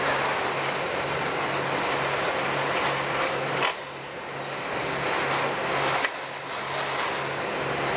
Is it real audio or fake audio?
real